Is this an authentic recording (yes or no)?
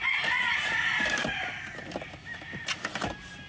yes